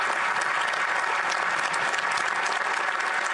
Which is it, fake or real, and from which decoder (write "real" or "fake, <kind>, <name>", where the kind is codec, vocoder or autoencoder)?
real